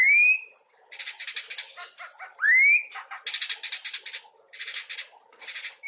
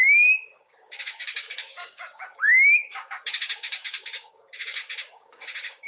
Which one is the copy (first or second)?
second